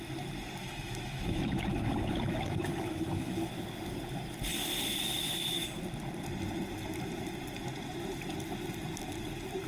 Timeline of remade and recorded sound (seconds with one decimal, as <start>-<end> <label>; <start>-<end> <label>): 0.0-0.6 recorded; 0.6-3.5 remade; 3.5-9.7 recorded